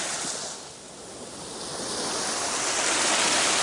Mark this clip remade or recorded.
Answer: recorded